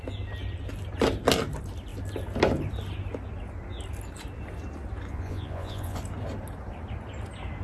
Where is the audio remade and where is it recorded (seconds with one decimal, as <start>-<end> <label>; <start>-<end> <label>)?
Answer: 0.0-5.1 recorded; 5.1-6.0 remade; 6.0-7.6 recorded